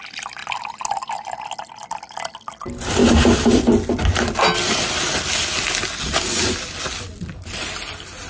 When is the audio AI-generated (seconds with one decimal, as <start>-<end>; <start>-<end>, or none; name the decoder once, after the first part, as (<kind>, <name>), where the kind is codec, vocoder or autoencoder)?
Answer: none